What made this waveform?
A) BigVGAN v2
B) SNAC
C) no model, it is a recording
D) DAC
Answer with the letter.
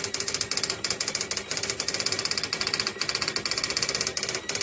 C